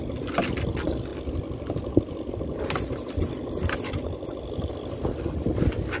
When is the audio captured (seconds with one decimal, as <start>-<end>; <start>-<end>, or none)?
0.0-6.0